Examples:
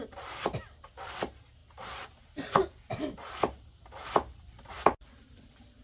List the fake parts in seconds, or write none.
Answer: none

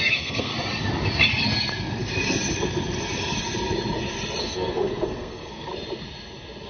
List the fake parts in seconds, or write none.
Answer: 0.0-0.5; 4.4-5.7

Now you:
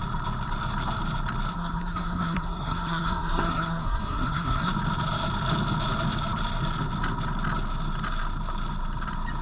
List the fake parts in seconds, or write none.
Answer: 1.5-4.7

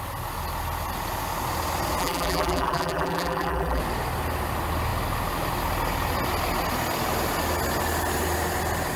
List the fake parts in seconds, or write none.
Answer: 2.0-3.8